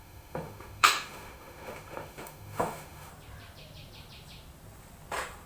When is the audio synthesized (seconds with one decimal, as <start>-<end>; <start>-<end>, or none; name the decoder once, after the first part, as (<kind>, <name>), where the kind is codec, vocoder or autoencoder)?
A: 0.0-3.1 (autoencoder, DAC-VAE)

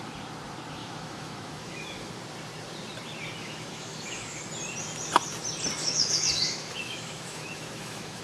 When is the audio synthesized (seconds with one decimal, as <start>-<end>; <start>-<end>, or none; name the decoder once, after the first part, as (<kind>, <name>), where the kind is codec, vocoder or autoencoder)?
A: 0.8-2.1 (autoencoder, DAC-VAE); 3.4-4.4; 5.8-8.2

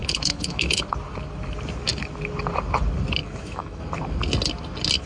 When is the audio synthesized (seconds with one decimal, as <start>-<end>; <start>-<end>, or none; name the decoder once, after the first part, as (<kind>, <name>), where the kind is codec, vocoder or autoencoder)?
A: 0.0-0.8 (autoencoder, DAC-VAE); 3.2-3.8

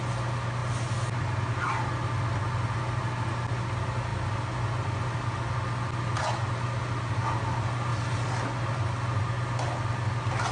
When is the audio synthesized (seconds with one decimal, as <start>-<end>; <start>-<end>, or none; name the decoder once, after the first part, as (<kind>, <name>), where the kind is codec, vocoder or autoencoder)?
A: none

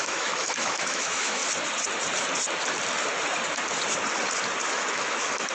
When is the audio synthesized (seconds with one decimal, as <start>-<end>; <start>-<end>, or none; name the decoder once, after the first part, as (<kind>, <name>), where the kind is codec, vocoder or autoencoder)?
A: 0.0-1.4 (autoencoder, DAC-VAE); 4.7-5.5

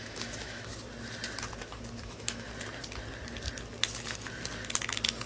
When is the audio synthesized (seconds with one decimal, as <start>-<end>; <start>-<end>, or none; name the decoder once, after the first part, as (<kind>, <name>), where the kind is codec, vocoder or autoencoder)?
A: 0.0-0.7 (autoencoder, DAC-VAE); 2.0-2.5